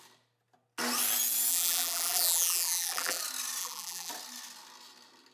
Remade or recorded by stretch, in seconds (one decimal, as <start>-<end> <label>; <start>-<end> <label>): 0.0-1.5 recorded; 1.5-3.2 remade; 3.2-3.6 recorded; 3.6-4.1 remade; 4.1-5.3 recorded